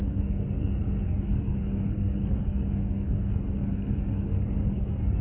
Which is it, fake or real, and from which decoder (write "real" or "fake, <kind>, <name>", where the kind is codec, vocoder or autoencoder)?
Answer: fake, codec, SNAC